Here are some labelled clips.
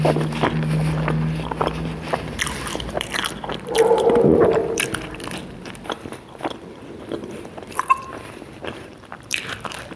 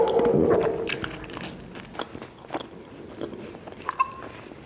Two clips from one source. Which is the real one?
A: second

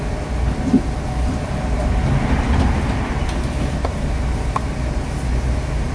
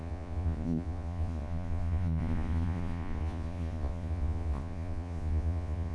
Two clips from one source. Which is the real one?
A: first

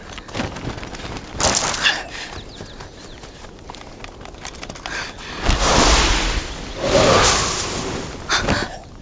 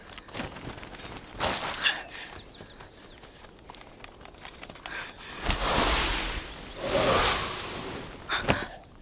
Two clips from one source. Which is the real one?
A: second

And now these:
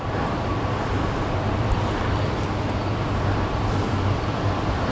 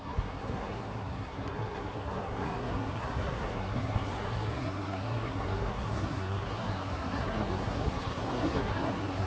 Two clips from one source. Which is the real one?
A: first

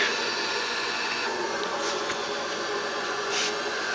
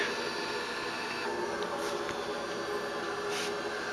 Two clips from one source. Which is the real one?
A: second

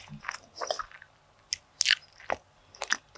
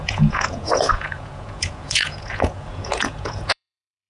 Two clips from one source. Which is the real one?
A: first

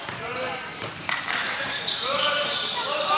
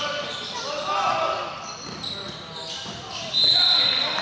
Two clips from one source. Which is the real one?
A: second